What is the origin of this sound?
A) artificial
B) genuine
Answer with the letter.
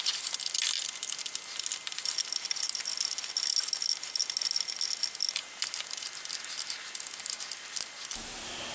B